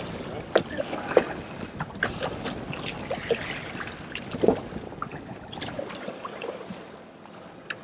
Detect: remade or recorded recorded